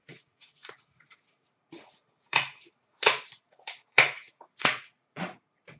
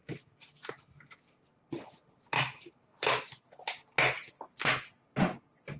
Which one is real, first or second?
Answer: second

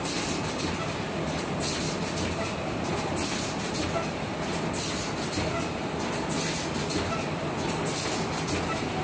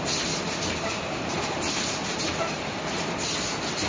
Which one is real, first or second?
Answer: first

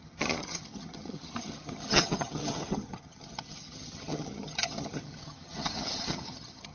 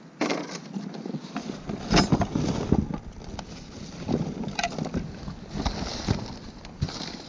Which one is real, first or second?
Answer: second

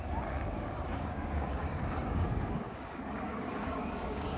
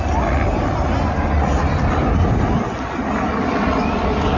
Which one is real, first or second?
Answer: second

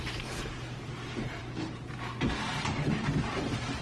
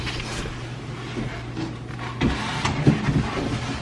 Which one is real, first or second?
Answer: second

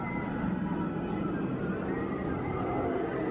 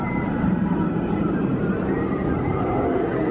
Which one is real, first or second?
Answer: first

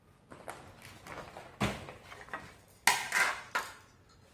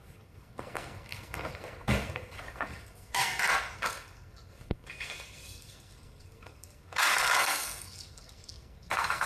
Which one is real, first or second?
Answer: first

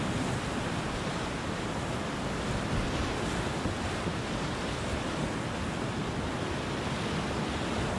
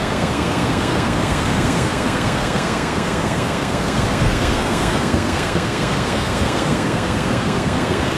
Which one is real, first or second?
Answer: first